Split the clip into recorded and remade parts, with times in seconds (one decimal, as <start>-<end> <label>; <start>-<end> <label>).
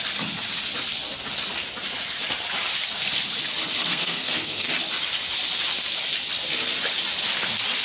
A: 0.0-3.9 recorded; 3.9-4.7 remade; 4.7-7.8 recorded